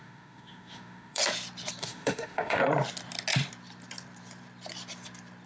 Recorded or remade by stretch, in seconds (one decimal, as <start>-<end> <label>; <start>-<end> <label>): 0.0-1.2 remade; 1.2-1.8 recorded; 1.8-2.6 remade; 2.6-5.5 recorded